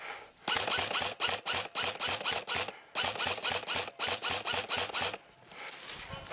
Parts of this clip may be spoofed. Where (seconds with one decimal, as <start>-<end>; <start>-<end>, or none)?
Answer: none